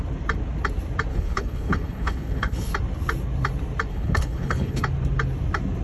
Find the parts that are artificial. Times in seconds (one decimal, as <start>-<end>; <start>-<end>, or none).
1.1-2.7; 3.9-4.8